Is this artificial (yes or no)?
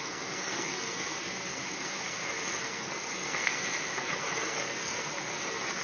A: yes